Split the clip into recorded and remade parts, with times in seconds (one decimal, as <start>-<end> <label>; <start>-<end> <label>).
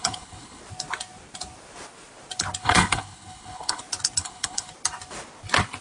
0.0-0.6 remade; 0.6-2.6 recorded; 2.6-3.8 remade; 3.8-4.2 recorded; 4.2-4.7 remade; 4.7-5.8 recorded